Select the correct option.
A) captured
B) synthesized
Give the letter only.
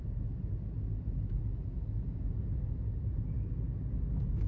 A